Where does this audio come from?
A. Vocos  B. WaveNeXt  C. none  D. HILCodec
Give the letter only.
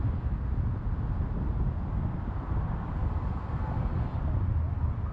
C